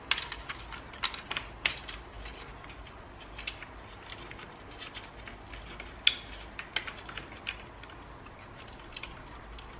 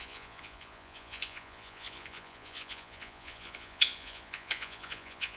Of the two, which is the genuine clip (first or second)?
first